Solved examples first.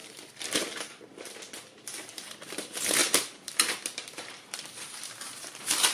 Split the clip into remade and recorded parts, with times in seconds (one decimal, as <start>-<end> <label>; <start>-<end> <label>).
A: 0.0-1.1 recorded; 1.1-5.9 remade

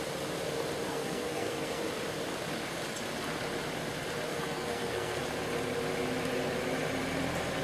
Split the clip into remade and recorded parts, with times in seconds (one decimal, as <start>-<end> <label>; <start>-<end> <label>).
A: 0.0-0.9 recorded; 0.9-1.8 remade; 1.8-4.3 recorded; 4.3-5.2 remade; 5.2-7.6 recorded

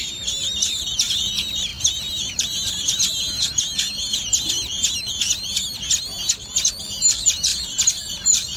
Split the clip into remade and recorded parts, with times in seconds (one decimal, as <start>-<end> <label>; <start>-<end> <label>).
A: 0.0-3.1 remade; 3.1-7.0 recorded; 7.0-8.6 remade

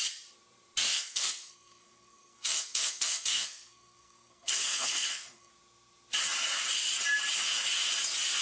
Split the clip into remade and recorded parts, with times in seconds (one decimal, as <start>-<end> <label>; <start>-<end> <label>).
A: 0.0-0.9 recorded; 0.9-5.5 remade; 5.5-8.4 recorded

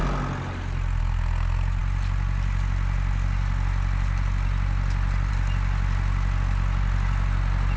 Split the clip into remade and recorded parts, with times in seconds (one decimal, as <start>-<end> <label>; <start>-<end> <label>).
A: 0.0-7.8 recorded

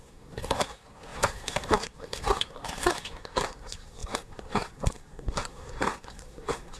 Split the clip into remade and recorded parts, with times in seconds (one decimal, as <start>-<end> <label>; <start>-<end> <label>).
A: 0.0-6.8 remade